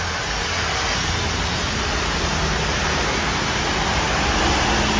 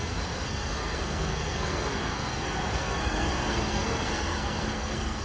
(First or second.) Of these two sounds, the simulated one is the second